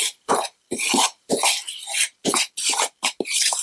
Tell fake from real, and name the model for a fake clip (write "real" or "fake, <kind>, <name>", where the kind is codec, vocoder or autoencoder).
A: real